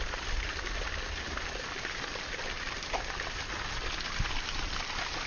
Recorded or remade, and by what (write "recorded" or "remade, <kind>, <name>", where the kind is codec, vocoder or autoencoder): recorded